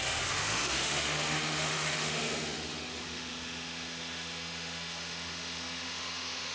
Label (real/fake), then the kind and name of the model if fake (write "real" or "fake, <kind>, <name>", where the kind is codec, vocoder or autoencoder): fake, autoencoder, DAC-VAE